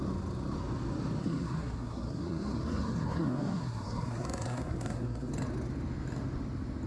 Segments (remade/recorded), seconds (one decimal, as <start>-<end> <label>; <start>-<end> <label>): 0.0-1.2 recorded; 1.2-5.3 remade; 5.3-6.9 recorded